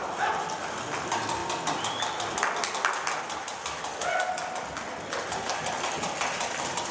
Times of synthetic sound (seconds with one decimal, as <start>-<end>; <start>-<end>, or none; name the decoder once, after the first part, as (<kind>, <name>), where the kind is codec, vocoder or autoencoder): none